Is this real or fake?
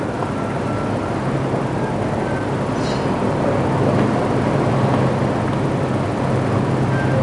real